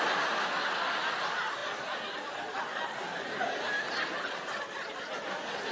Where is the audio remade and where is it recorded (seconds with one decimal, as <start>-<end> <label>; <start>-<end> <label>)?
0.0-5.7 recorded

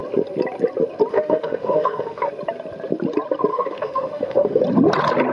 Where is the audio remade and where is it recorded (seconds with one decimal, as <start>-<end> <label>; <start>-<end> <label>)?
0.0-1.1 recorded; 1.1-2.3 remade; 2.3-3.5 recorded; 3.5-4.6 remade; 4.6-5.3 recorded

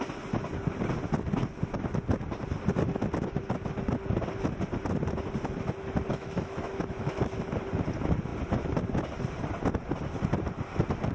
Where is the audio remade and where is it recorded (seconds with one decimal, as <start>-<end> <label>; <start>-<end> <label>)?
0.0-6.1 recorded; 6.1-7.4 remade; 7.4-11.1 recorded